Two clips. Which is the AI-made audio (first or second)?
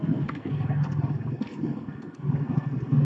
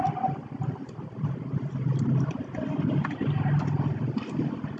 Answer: first